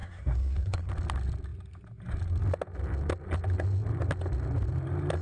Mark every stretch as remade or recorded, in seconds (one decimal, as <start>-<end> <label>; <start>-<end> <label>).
0.0-0.9 remade; 0.9-5.2 recorded